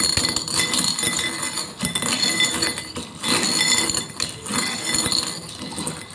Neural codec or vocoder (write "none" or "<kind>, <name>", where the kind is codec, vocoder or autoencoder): none